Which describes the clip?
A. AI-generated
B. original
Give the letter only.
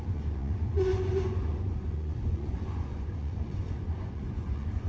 A